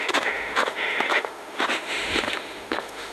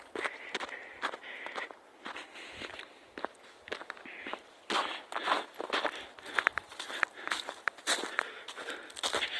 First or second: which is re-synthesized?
first